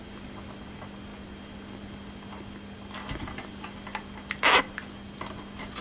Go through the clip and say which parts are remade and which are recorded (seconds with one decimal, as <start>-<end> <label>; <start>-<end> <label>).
0.0-5.8 recorded

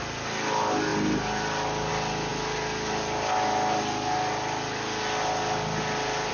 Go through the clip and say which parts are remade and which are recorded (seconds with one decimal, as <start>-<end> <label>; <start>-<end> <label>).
0.0-6.3 recorded

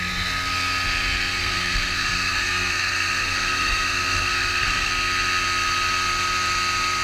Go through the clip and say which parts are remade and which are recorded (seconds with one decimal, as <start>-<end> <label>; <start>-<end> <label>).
0.0-1.4 recorded; 1.4-4.9 remade; 4.9-7.0 recorded

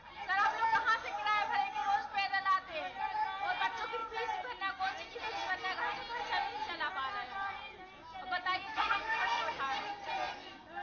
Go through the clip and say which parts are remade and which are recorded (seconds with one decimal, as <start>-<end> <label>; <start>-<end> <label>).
0.0-8.7 recorded; 8.7-9.6 remade; 9.6-10.8 recorded

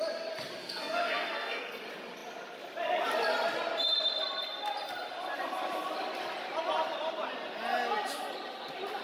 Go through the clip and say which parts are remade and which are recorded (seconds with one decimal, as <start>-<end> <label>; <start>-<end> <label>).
0.0-0.6 recorded; 0.6-1.8 remade; 1.8-9.0 recorded

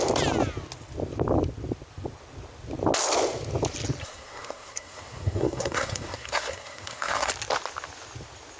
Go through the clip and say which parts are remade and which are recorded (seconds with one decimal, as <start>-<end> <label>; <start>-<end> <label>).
0.0-4.0 recorded; 4.0-7.3 remade; 7.3-8.6 recorded

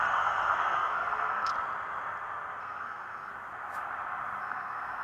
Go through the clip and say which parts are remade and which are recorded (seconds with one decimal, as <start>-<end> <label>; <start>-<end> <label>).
0.0-1.5 remade; 1.5-2.6 recorded; 2.6-3.3 remade; 3.3-4.4 recorded; 4.4-5.0 remade

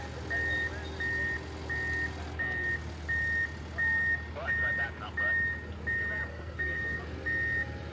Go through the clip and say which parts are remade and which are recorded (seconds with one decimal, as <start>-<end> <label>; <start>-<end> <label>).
0.0-6.3 recorded; 6.3-7.0 remade; 7.0-7.9 recorded